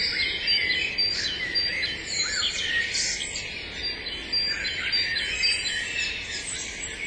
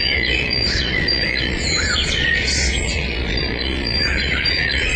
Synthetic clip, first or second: second